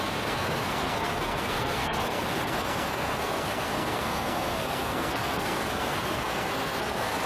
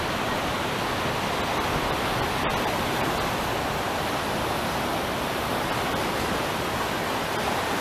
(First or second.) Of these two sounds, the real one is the second